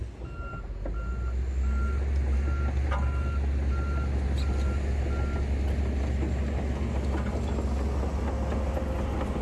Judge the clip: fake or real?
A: real